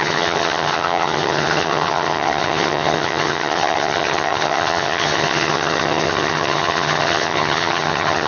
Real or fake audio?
fake